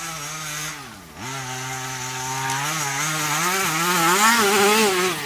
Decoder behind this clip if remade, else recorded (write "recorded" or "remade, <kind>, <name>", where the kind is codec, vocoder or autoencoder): recorded